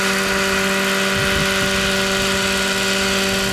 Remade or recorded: recorded